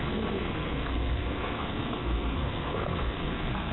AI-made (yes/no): yes